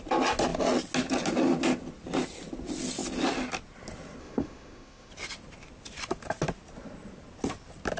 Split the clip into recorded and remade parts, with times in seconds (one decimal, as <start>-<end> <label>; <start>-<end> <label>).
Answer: 0.0-4.2 recorded; 4.2-5.1 remade; 5.1-8.0 recorded